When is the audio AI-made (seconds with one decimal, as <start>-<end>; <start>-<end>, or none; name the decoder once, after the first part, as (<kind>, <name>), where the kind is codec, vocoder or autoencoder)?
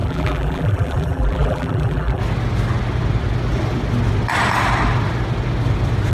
0.0-2.2 (vocoder, BigVGAN v2)